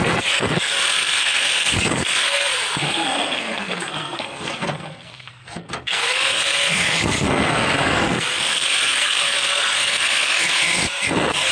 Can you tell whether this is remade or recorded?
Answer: remade